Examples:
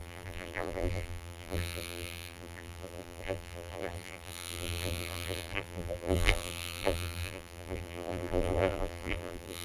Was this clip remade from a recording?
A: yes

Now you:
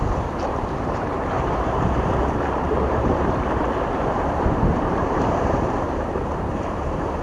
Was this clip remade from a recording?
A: yes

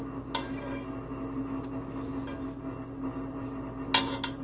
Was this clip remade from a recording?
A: no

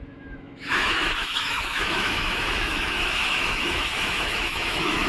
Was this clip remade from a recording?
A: yes